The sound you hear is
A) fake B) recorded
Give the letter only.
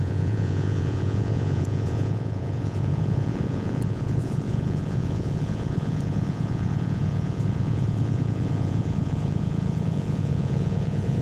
A